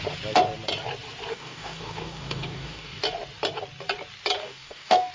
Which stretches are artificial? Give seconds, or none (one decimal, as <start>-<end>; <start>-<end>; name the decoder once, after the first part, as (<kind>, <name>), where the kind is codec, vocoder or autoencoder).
1.3-3.0 (codec, DAC); 4.4-5.1

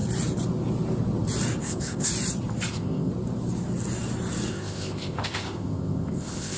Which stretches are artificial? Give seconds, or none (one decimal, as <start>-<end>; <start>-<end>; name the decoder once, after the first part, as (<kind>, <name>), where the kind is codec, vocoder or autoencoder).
1.6-2.1 (codec, ZipCodec); 2.7-3.1; 4.5-6.6

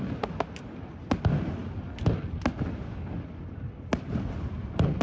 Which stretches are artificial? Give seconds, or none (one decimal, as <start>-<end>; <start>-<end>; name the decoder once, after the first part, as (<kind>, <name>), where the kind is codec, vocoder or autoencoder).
none

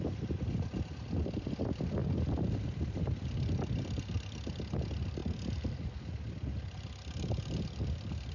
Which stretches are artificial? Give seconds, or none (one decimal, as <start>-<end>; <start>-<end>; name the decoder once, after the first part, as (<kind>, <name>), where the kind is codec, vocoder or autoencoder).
none

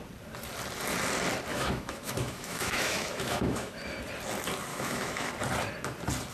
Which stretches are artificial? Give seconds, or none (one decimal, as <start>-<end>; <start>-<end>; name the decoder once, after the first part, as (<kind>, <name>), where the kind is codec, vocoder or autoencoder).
1.5-3.8 (autoencoder, DAC-VAE); 4.7-5.3

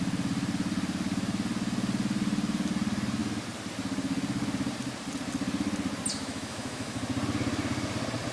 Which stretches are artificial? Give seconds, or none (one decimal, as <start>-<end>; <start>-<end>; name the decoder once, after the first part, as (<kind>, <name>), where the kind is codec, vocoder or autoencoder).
6.1-7.0 (autoencoder, DAC-VAE)

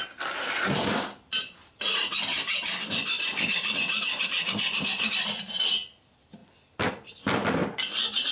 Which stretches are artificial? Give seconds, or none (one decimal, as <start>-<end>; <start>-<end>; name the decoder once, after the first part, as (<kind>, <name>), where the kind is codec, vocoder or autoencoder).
0.0-6.4 (vocoder, BigVGAN v2); 6.9-7.6